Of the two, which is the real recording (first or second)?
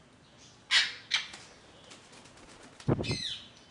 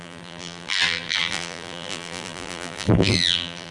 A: first